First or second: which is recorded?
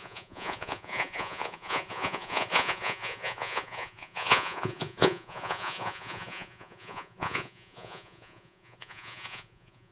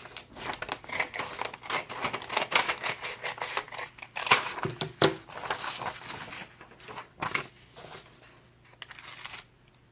second